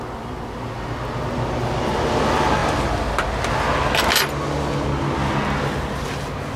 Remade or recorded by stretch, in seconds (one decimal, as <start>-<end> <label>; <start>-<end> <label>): 0.0-6.6 recorded